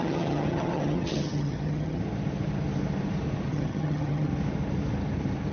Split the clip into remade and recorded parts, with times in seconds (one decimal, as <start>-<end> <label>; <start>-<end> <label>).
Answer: 0.0-2.0 remade; 2.0-3.5 recorded; 3.5-4.3 remade; 4.3-5.5 recorded

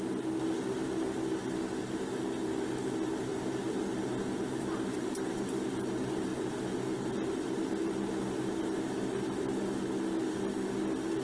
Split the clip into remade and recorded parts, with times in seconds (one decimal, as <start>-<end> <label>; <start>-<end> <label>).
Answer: 0.0-11.2 recorded

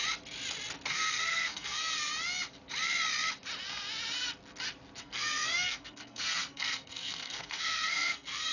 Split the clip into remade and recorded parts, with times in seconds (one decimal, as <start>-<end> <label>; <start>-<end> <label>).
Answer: 0.0-0.9 recorded; 0.9-1.8 remade; 1.8-5.0 recorded; 5.0-8.5 remade

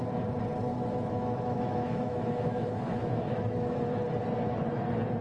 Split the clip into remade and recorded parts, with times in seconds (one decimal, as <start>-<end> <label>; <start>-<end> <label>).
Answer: 0.0-0.7 recorded; 0.7-3.8 remade; 3.8-5.2 recorded

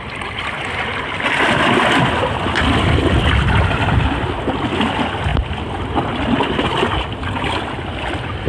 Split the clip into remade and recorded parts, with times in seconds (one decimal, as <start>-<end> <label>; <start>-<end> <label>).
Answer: 0.0-8.5 recorded

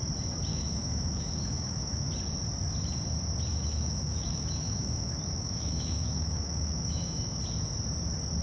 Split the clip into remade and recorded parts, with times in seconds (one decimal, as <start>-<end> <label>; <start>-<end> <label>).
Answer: 0.0-0.5 recorded; 0.5-2.1 remade; 2.1-3.5 recorded; 3.5-7.4 remade; 7.4-8.4 recorded

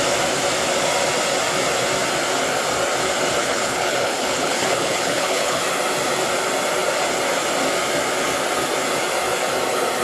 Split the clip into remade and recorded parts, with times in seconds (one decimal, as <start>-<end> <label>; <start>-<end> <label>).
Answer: 0.0-3.4 recorded; 3.4-5.6 remade; 5.6-10.0 recorded

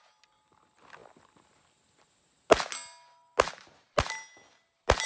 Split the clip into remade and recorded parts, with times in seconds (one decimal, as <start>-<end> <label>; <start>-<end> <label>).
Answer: 0.0-5.1 recorded